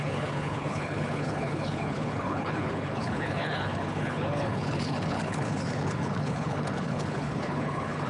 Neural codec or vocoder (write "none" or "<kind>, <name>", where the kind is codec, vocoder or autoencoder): codec, HILCodec